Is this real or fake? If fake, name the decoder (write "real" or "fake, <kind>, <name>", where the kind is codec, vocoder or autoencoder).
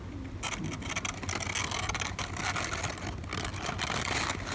real